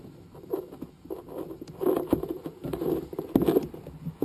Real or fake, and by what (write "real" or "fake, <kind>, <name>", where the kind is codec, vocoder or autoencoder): real